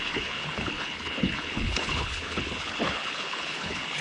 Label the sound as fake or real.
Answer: fake